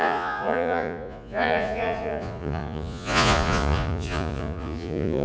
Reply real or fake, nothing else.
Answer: fake